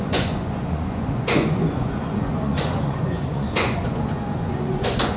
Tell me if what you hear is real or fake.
fake